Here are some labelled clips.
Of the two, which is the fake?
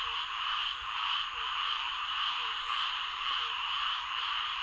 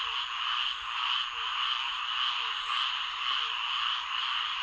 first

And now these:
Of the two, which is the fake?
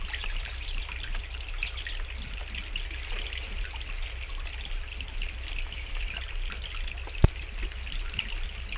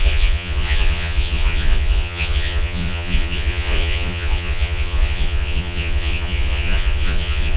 second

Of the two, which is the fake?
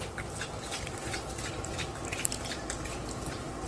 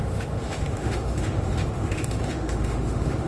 second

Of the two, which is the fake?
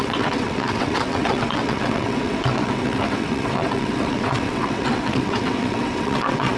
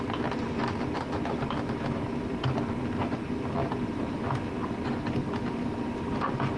first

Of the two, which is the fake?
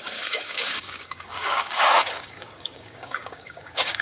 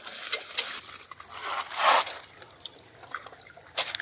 first